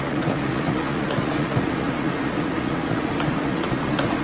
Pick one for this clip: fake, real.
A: fake